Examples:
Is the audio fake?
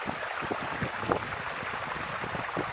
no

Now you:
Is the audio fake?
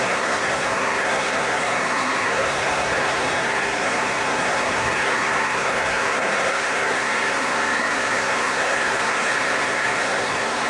yes